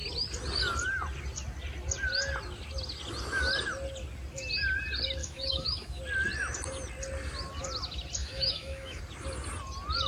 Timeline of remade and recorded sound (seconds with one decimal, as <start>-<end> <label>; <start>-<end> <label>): 0.0-5.2 recorded; 5.2-6.0 remade; 6.0-8.2 recorded; 8.2-9.0 remade; 9.0-10.1 recorded